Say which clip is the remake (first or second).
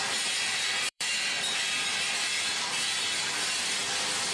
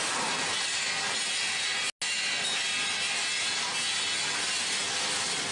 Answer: first